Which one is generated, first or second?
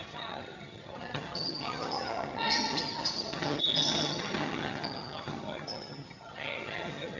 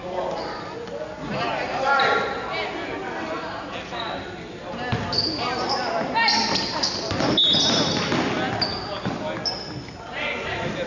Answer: first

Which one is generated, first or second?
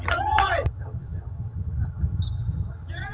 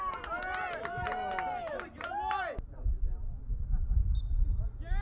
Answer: first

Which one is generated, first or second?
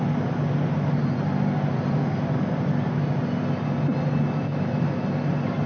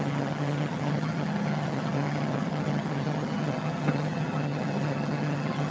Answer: second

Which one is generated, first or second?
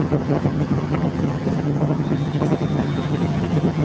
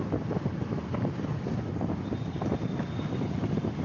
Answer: first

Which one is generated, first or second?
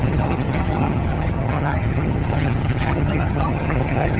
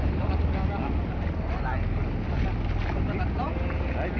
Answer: first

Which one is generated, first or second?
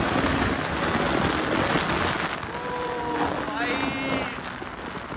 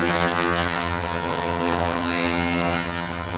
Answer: second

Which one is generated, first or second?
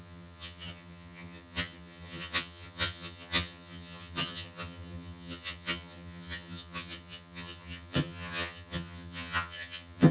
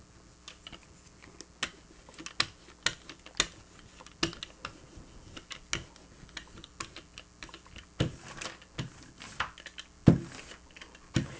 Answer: first